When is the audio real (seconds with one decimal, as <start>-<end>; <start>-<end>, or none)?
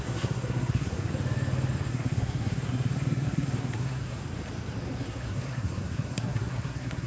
1.1-1.9; 4.2-5.0